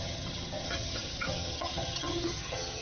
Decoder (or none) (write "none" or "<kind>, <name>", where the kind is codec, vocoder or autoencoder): vocoder, HiFi-GAN